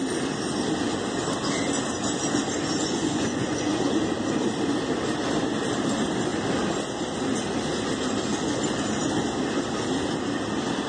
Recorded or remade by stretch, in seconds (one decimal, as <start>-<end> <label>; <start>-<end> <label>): 0.0-2.8 recorded; 2.8-4.0 remade; 4.0-10.9 recorded